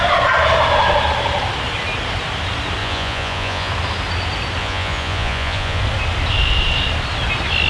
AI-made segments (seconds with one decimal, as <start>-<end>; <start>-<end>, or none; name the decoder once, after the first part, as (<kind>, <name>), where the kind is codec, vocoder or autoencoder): 2.8-3.7 (vocoder, Vocos); 4.6-5.8